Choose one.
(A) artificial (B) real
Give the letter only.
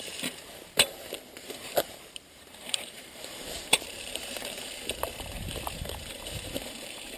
A